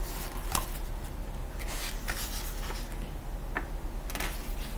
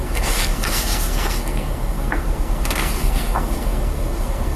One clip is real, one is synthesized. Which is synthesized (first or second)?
second